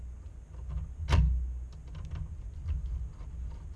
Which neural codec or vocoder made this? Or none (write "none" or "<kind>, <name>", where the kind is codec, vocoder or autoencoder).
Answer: none